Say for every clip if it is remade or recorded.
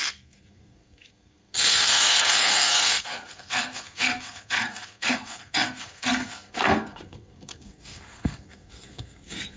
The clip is remade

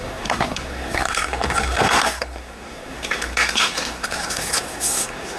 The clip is remade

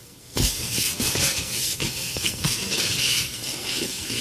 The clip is remade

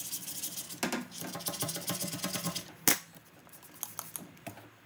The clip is recorded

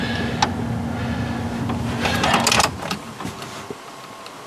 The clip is recorded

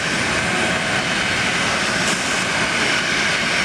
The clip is recorded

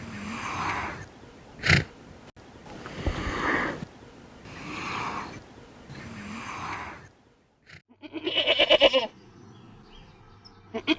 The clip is recorded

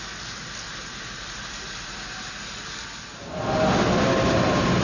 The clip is recorded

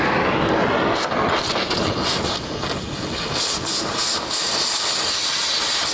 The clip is recorded